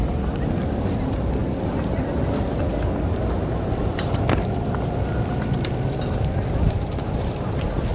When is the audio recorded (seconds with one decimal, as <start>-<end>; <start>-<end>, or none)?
0.0-7.9